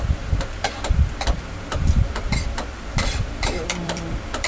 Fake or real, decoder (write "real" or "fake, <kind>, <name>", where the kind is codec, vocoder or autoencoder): fake, vocoder, BigVGAN v2